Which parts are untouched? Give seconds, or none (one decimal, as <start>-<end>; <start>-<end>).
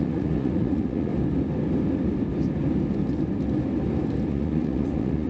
1.1-4.3